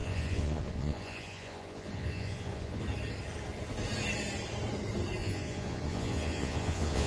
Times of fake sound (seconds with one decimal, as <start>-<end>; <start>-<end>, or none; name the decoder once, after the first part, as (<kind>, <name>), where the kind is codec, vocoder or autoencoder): 0.0-2.8 (vocoder, Vocos); 5.2-7.1